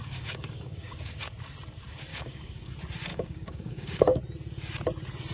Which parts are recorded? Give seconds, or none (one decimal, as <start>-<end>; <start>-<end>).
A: 1.2-2.1; 2.7-3.1; 4.2-5.3